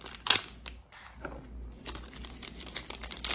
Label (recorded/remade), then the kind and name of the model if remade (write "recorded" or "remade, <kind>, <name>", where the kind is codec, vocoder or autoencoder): recorded